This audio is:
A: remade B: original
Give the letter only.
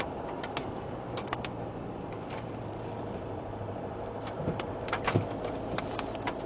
A